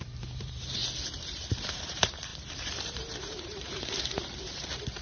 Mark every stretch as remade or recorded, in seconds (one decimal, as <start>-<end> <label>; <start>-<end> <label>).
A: 0.0-0.8 remade; 0.8-1.5 recorded; 1.5-5.0 remade